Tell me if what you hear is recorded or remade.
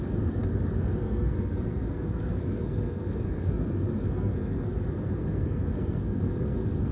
remade